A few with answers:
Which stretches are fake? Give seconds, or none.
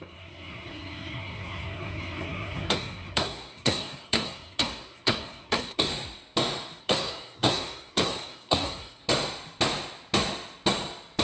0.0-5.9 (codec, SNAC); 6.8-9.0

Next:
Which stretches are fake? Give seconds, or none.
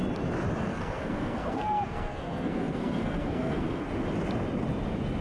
0.7-3.8 (codec, SNAC)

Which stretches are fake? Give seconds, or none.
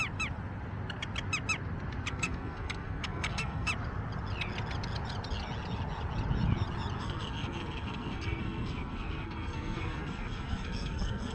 2.1-3.7 (codec, SNAC); 7.0-11.3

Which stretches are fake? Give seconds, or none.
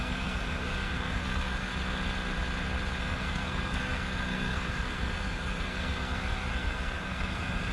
0.0-1.7 (codec, SNAC); 3.0-7.7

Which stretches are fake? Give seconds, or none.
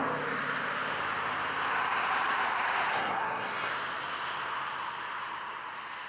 2.9-3.7 (codec, SNAC)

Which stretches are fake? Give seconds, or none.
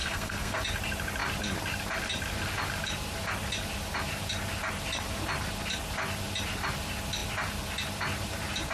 0.0-0.6 (codec, SNAC)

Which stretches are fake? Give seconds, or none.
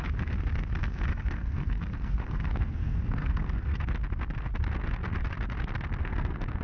0.8-3.9 (codec, SNAC); 6.0-6.6